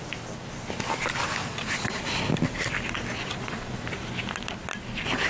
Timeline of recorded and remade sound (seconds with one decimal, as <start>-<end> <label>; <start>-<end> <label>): 0.0-1.4 recorded; 1.4-2.0 remade; 2.0-3.1 recorded; 3.1-3.8 remade; 3.8-5.3 recorded

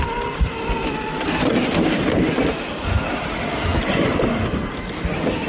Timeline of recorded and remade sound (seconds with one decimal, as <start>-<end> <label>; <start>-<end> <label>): 0.0-5.5 recorded

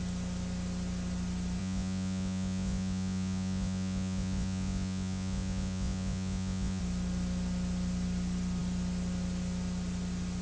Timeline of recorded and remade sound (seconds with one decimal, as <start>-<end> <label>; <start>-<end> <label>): 0.0-1.6 recorded; 1.6-6.8 remade; 6.8-10.4 recorded

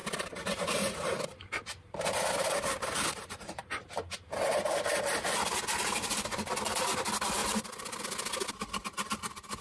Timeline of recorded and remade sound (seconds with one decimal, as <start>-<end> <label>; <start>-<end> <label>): 0.0-9.6 recorded

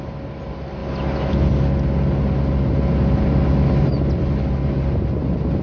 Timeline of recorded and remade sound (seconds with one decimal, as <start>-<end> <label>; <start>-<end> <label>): 0.0-5.6 recorded

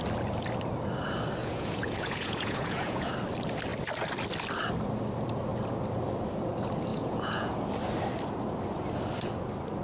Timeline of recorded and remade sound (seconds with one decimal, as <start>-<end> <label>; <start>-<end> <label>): 0.0-1.4 recorded; 1.4-3.1 remade; 3.1-6.9 recorded; 6.9-7.7 remade; 7.7-9.8 recorded

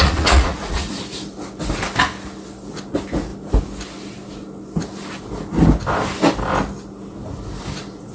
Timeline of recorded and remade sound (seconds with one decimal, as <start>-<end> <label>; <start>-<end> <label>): 0.0-1.0 remade; 1.0-8.1 recorded